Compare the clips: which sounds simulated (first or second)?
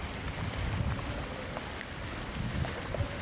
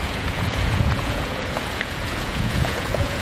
second